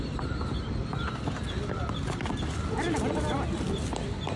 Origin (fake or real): real